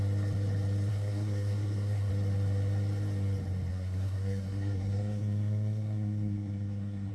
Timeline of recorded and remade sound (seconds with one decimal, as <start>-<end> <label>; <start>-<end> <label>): 0.0-0.9 recorded; 0.9-2.1 remade; 2.1-3.7 recorded; 3.7-7.1 remade